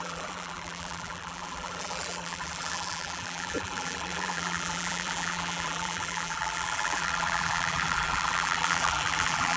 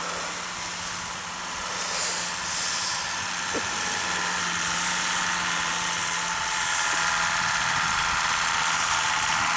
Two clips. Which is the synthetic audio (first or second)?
first